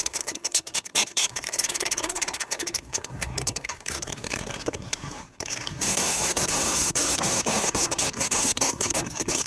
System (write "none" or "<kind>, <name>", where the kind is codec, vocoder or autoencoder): codec, SNAC